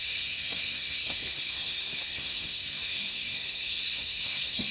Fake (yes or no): yes